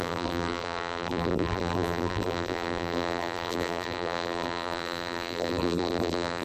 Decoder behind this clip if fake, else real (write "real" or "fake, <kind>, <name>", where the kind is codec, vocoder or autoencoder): fake, vocoder, BigVGAN v2